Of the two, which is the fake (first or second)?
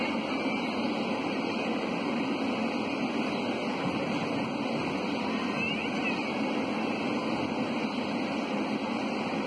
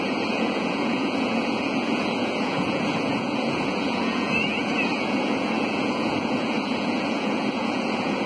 second